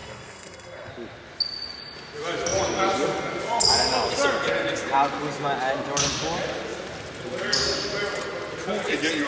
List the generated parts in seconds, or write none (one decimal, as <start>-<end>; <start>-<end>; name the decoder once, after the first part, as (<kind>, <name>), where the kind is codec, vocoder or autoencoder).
0.0-0.9 (codec, SNAC)